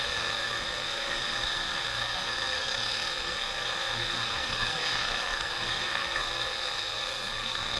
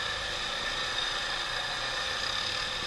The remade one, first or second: first